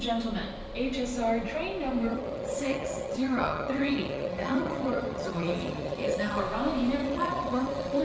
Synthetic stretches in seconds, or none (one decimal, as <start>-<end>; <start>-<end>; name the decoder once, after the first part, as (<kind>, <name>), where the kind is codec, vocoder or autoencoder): 2.1-6.4 (vocoder, HiFi-GAN); 7.0-8.0